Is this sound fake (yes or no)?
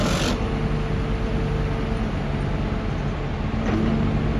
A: no